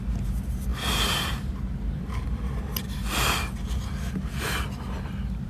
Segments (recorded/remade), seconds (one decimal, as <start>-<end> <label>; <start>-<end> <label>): 0.0-2.7 remade; 2.7-4.7 recorded; 4.7-5.5 remade